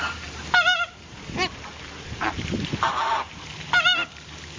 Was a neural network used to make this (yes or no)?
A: yes